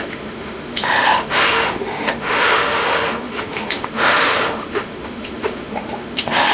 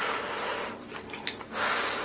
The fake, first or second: first